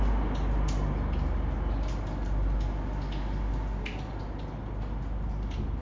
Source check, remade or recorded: recorded